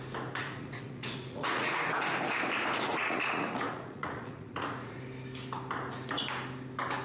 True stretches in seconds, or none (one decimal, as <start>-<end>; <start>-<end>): 0.0-0.4; 1.9-2.9; 5.0-7.0